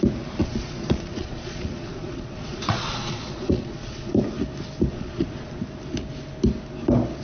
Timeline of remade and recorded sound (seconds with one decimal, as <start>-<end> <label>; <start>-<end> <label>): 0.0-0.4 recorded; 0.4-4.1 remade; 4.1-4.9 recorded; 4.9-5.6 remade; 5.6-7.2 recorded